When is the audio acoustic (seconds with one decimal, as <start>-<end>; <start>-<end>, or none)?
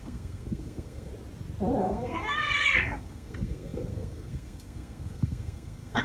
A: 1.1-1.8